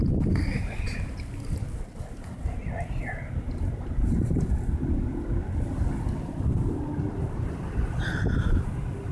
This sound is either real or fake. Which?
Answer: real